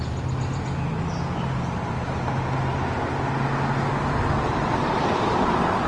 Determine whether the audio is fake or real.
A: real